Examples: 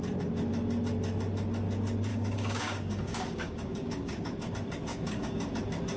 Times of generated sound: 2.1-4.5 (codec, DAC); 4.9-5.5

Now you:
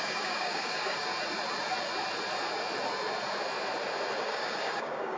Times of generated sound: 0.0-1.1 (codec, DAC); 4.2-5.2

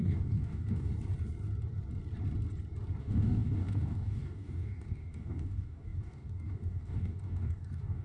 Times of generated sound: 0.0-0.9 (codec, DAC); 3.0-8.0

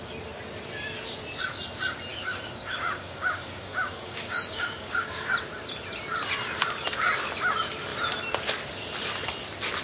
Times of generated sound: 2.1-5.3 (codec, DAC)

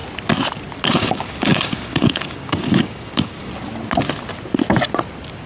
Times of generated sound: 0.9-3.5 (codec, DAC)